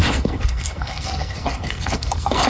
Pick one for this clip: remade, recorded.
remade